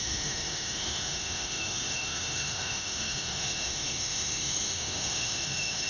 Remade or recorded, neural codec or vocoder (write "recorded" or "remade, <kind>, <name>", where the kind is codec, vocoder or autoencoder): remade, autoencoder, DAC-VAE